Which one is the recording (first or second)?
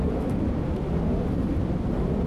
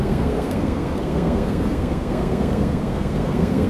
first